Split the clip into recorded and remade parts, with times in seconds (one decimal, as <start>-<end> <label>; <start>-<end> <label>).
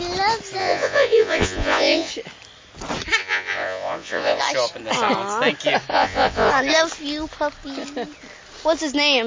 0.0-0.6 recorded; 0.6-2.1 remade; 2.1-3.2 recorded; 3.2-4.4 remade; 4.4-5.9 recorded; 5.9-6.5 remade; 6.5-9.3 recorded